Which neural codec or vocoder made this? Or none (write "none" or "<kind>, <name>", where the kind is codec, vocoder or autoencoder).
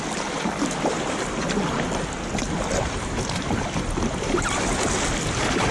vocoder, BigVGAN v2